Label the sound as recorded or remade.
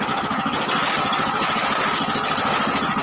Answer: recorded